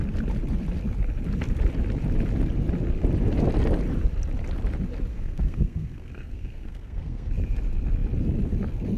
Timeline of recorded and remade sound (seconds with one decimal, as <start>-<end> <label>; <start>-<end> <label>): 0.0-5.1 recorded; 5.1-7.3 remade; 7.3-9.0 recorded